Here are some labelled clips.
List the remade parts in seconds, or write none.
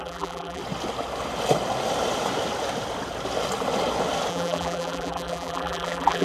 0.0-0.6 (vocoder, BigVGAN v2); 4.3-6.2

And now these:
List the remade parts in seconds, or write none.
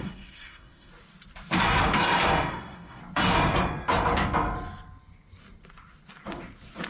0.0-0.9 (codec, SNAC); 2.5-3.0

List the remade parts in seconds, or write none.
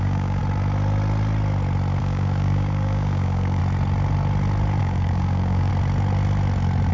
0.0-0.4 (codec, DAC); 2.0-3.6; 4.8-5.7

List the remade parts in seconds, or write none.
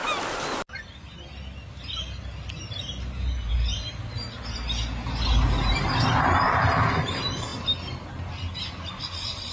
none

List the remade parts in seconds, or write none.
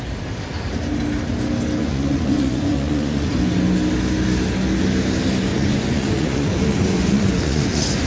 1.8-3.3 (vocoder, Vocos); 5.5-8.1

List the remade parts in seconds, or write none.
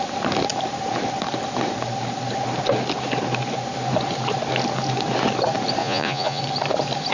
5.8-6.4 (vocoder, Vocos)